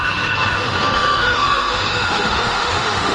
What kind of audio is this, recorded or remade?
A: remade